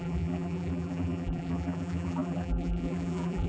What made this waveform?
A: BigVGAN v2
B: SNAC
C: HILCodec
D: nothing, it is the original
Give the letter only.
A